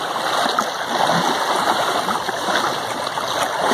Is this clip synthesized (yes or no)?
no